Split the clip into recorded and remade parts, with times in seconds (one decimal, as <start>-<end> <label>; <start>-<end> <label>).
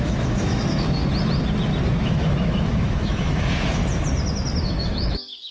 0.0-1.0 remade; 1.0-2.0 recorded; 2.0-3.8 remade; 3.8-4.6 recorded; 4.6-5.5 remade